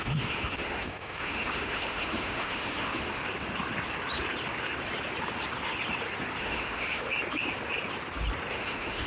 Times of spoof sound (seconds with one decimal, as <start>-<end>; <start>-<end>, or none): 0.0-3.2; 6.4-7.0; 8.5-9.1